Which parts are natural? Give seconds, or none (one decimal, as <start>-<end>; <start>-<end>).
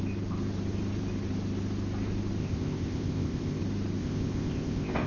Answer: 0.0-2.4; 3.6-4.0